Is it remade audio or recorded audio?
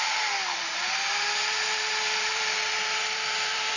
remade